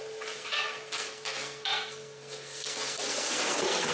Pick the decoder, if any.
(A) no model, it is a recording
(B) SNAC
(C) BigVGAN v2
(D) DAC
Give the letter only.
B